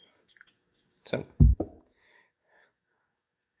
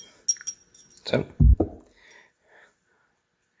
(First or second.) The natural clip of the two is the second